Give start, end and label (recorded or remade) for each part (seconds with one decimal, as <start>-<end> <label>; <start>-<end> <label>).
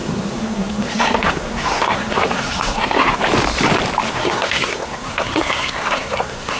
0.0-3.2 remade; 3.2-4.1 recorded; 4.1-6.6 remade